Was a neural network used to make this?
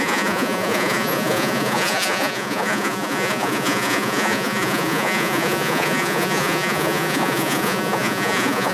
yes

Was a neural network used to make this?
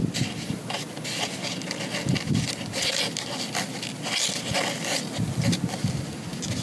no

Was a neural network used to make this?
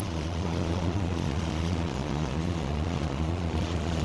yes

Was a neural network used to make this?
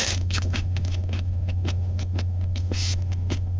yes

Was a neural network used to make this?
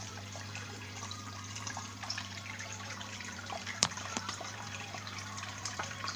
yes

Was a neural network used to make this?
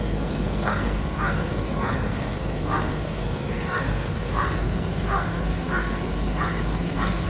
yes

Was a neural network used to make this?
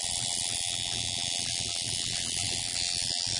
no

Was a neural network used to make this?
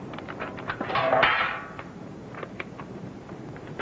yes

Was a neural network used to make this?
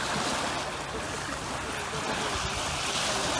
no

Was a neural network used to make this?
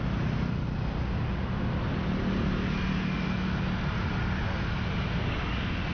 no